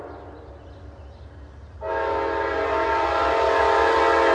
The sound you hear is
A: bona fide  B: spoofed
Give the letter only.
A